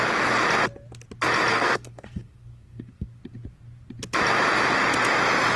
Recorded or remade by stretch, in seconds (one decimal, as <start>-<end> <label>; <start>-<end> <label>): 0.0-1.5 recorded; 1.5-3.2 remade; 3.2-5.6 recorded